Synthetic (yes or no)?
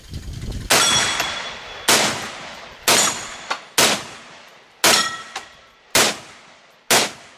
no